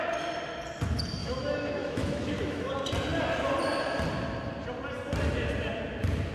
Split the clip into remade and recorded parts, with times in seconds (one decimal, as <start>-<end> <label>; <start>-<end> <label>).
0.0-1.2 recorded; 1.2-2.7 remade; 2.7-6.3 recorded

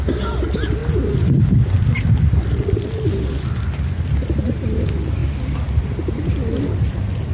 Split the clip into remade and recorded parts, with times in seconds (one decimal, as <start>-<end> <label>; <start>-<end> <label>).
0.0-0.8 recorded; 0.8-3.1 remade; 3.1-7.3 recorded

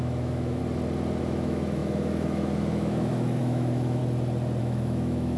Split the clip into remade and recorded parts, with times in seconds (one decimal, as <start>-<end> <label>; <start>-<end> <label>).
0.0-0.6 remade; 0.6-1.2 recorded; 1.2-4.0 remade; 4.0-4.6 recorded; 4.6-5.4 remade

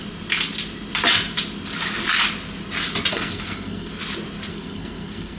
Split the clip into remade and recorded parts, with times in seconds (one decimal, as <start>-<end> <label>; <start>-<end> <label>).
0.0-3.1 recorded; 3.1-3.9 remade; 3.9-4.5 recorded; 4.5-5.4 remade

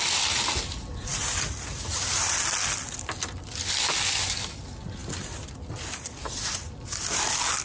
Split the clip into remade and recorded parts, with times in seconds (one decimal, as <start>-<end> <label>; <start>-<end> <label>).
0.0-7.6 recorded

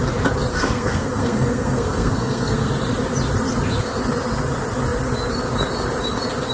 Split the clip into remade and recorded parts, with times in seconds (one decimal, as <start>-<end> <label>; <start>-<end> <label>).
0.0-0.5 recorded; 0.5-2.7 remade; 2.7-6.5 recorded

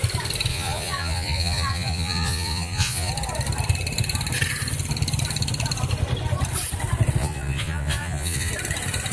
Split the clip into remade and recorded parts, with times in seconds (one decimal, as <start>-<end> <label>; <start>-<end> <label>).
0.0-0.5 recorded; 0.5-3.1 remade; 3.1-7.2 recorded; 7.2-8.5 remade; 8.5-9.1 recorded